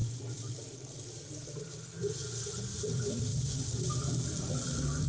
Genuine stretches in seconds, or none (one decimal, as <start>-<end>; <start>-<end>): 2.2-2.8; 3.3-4.4